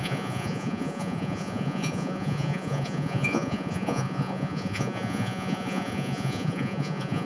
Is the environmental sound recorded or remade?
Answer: remade